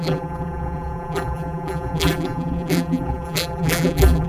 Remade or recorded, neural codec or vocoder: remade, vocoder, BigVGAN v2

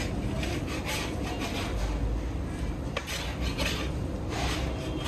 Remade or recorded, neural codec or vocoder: recorded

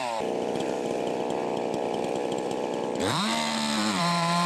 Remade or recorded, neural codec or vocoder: remade, vocoder, BigVGAN v2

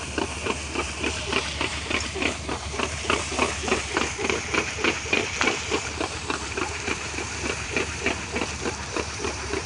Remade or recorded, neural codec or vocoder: remade, vocoder, BigVGAN v2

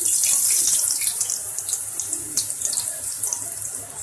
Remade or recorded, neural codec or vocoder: recorded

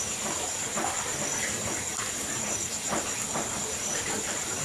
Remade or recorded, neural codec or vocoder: recorded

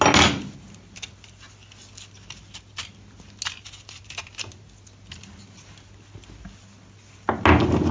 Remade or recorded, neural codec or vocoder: recorded